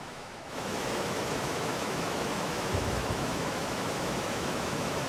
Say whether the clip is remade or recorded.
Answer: remade